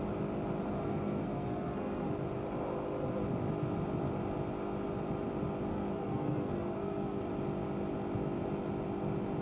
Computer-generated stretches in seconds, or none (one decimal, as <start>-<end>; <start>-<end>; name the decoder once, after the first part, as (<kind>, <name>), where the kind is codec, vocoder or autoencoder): 0.8-2.1 (codec, SNAC); 5.7-7.2